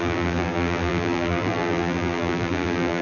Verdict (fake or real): fake